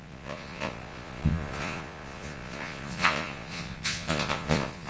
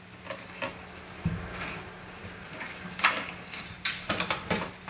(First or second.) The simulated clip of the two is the first